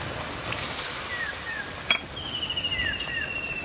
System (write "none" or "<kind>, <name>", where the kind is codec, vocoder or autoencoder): none